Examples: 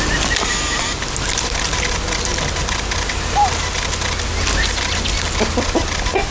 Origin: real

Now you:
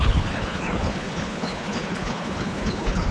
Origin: fake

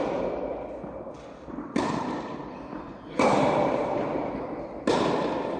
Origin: real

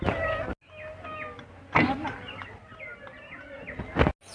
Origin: real